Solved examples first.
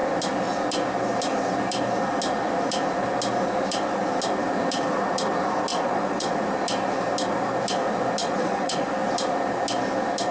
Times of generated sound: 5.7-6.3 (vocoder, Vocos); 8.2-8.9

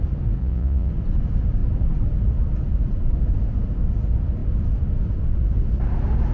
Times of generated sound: 0.4-0.9 (vocoder, Vocos)

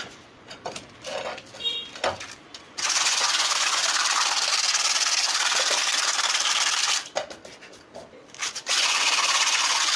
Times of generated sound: 0.0-0.7 (vocoder, Vocos); 2.4-3.8; 8.5-10.0

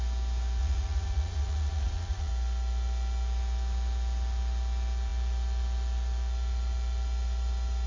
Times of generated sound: 0.6-2.3 (vocoder, Vocos)

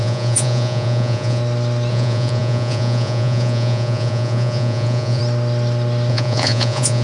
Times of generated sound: 0.0-1.4 (vocoder, Vocos); 1.9-5.2; 6.1-7.0